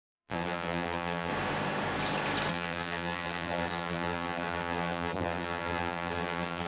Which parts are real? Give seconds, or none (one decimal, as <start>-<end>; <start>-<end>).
1.3-2.5